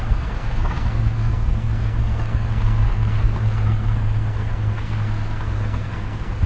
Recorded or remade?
remade